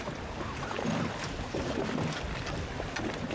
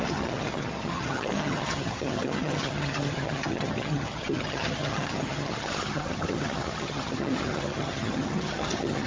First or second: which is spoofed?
second